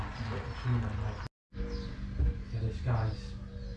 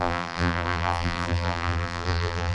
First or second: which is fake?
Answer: second